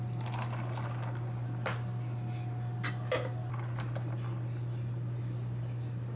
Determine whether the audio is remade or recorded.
recorded